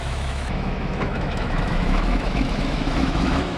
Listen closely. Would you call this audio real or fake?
fake